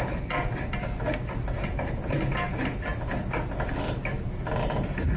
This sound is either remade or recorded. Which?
recorded